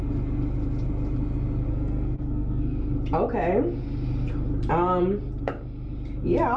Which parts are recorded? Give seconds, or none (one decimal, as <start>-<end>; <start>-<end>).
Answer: 0.0-1.7; 2.8-6.6